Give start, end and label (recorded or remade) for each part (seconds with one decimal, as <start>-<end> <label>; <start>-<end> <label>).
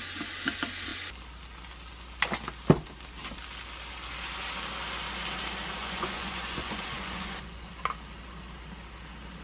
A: 0.0-5.8 recorded; 5.8-7.7 remade; 7.7-9.4 recorded